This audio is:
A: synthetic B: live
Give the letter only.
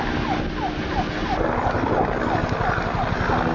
B